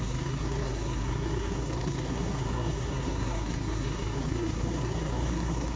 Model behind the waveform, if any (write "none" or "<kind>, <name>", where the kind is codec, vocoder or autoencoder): codec, SNAC